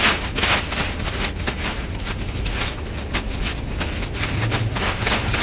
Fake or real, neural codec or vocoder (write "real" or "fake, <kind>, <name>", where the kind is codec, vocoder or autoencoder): real